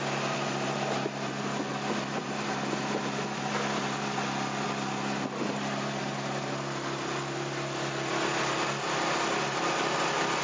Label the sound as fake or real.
real